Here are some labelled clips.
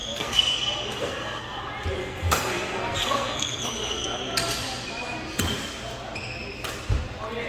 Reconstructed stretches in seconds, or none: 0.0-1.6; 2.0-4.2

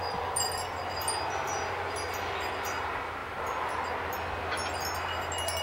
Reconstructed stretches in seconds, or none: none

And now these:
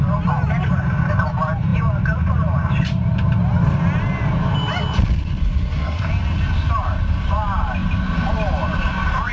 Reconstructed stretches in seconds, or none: 5.4-6.1